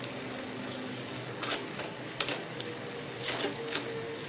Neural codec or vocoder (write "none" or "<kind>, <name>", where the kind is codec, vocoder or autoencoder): codec, DAC